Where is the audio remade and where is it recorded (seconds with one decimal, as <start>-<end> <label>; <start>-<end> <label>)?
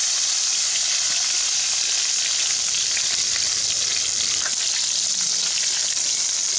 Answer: 0.0-3.5 remade; 3.5-6.6 recorded